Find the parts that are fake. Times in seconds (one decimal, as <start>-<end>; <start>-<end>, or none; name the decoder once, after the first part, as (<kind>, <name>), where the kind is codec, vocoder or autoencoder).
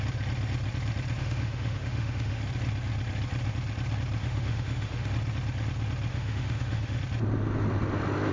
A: 1.2-2.4 (autoencoder, DAC-VAE); 4.2-5.1; 6.1-7.0